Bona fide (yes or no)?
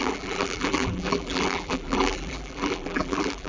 no